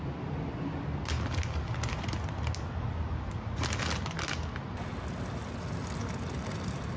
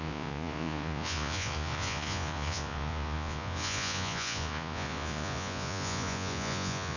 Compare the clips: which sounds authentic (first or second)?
first